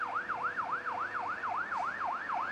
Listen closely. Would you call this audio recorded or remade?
recorded